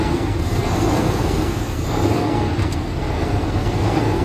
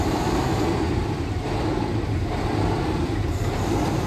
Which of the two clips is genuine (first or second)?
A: second